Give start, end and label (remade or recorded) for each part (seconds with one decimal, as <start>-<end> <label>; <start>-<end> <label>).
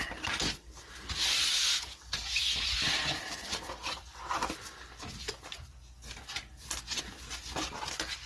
0.0-8.3 recorded